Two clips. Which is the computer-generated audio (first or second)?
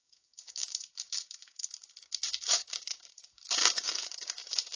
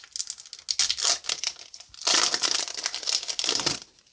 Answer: first